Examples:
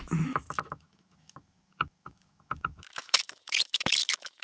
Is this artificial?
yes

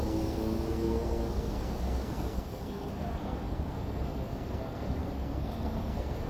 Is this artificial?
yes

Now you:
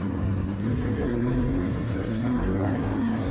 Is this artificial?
yes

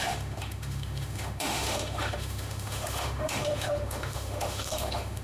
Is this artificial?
yes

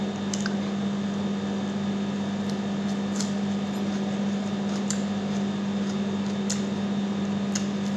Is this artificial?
no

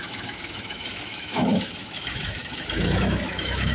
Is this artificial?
yes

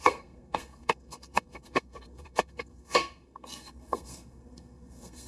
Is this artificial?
yes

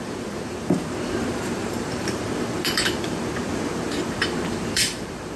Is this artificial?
yes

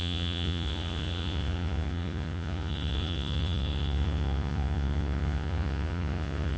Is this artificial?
yes